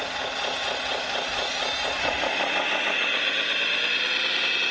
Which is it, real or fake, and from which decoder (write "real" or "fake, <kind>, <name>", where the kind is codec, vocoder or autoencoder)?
real